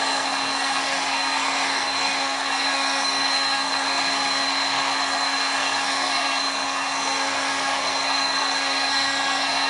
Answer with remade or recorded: remade